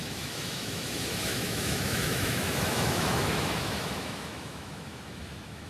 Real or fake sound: fake